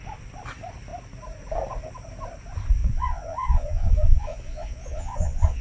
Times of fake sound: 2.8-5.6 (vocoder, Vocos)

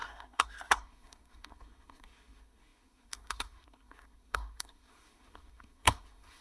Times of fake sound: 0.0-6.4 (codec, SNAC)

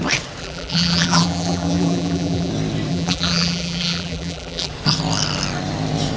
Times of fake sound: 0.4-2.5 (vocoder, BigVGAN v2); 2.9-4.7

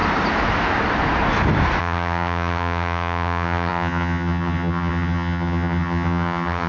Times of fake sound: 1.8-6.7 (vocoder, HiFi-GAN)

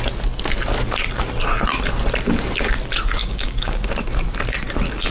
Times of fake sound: 3.2-3.9 (codec, DAC)

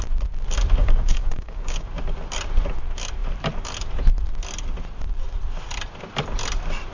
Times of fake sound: 0.8-1.9 (codec, DAC)

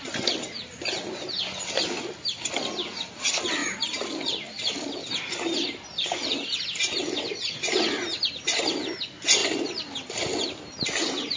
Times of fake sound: none

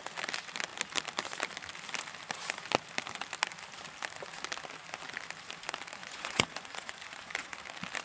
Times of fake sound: 6.0-7.5 (vocoder, Vocos)